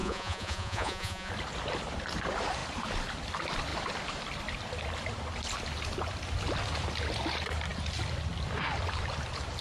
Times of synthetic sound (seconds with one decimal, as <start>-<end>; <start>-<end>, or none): 0.0-1.3